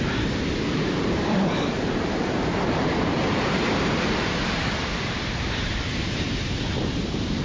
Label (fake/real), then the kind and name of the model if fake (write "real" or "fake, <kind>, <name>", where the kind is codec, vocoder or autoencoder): fake, vocoder, BigVGAN v2